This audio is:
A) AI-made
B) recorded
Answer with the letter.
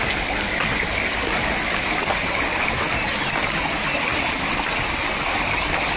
B